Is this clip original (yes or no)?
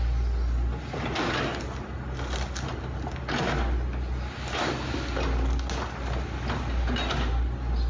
yes